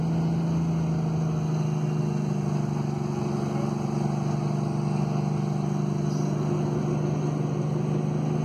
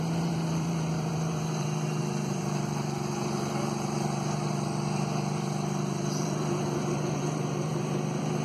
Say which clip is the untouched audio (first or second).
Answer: first